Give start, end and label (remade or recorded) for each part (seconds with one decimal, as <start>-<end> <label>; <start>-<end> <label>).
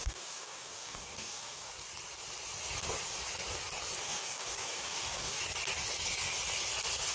0.0-1.7 remade; 1.7-4.0 recorded; 4.0-5.4 remade; 5.4-7.1 recorded